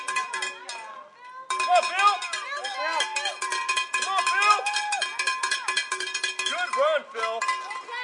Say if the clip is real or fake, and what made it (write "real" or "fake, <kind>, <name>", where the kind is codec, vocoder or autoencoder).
real